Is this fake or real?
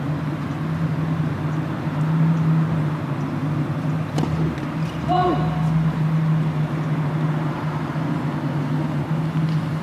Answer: real